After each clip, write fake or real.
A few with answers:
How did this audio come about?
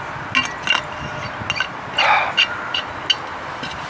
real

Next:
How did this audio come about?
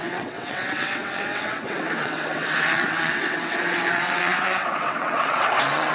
fake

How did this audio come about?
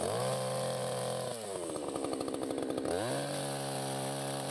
real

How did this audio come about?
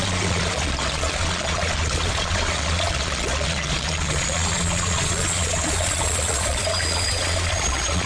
fake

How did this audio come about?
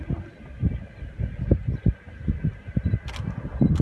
real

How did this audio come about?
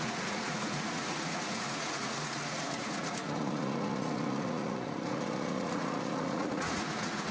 fake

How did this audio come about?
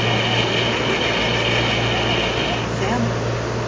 real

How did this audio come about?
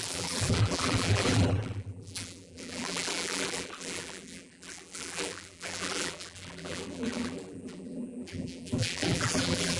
fake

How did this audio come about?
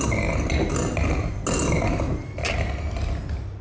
real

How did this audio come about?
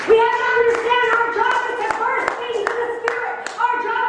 real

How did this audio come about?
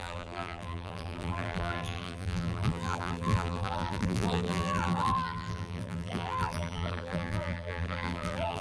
fake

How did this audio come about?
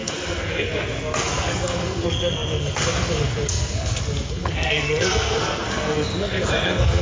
fake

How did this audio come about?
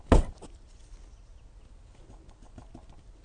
real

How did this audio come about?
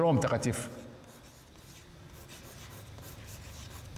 real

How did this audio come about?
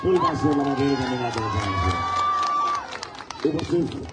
real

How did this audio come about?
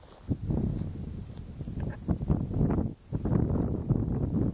real